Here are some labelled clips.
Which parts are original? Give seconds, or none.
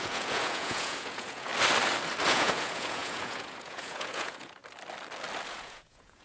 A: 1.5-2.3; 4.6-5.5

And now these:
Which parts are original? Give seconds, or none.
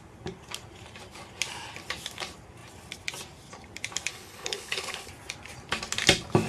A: 0.0-4.1; 5.1-6.5